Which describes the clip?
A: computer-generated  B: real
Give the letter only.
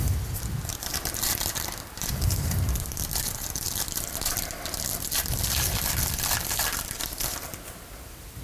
A